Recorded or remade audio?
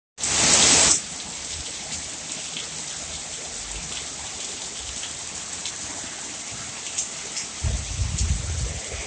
recorded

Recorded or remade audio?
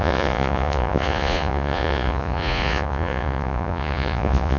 remade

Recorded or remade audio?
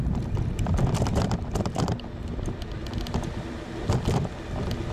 recorded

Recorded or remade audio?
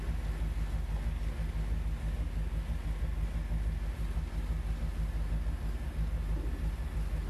recorded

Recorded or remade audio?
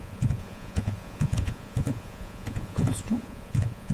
remade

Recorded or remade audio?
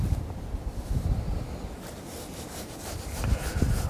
remade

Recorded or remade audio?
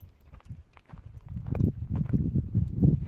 recorded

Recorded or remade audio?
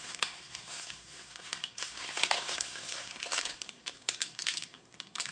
remade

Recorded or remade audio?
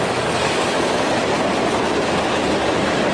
recorded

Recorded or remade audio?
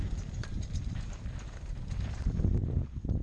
remade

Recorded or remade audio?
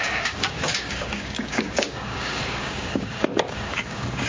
remade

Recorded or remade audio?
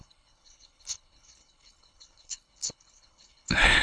remade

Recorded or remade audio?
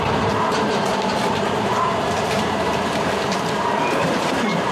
remade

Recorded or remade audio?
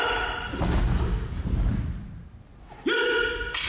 recorded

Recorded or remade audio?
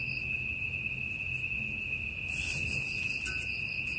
recorded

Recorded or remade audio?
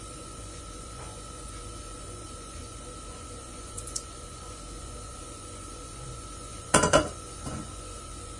remade